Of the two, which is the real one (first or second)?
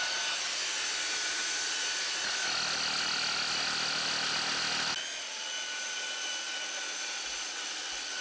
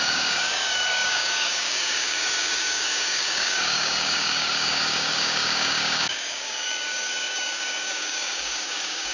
first